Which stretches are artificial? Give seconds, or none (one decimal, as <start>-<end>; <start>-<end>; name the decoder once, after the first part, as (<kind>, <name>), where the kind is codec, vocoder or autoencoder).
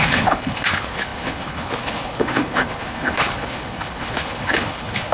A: 0.0-5.1 (codec, HILCodec)